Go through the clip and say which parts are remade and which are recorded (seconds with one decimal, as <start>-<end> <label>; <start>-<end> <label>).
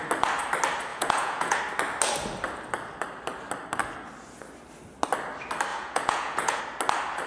0.0-0.9 recorded; 0.9-1.6 remade; 1.6-5.7 recorded; 5.7-6.6 remade; 6.6-7.3 recorded